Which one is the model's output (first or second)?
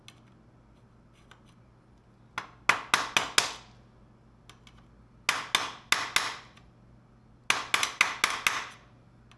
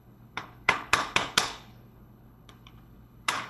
second